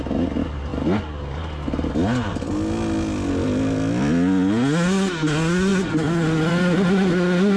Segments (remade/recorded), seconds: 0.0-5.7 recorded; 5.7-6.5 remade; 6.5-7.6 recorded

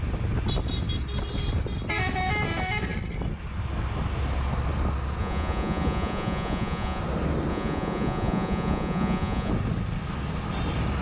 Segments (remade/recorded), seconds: 0.0-5.2 recorded; 5.2-7.0 remade; 7.0-7.5 recorded; 7.5-9.5 remade; 9.5-11.0 recorded

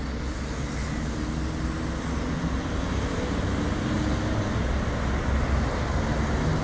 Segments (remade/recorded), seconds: 0.0-6.6 recorded